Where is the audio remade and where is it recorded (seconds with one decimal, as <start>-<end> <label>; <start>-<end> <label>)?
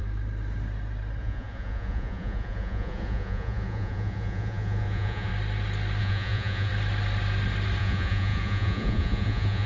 0.0-1.2 recorded; 1.2-5.3 remade; 5.3-6.0 recorded; 6.0-6.7 remade; 6.7-7.8 recorded; 7.8-9.7 remade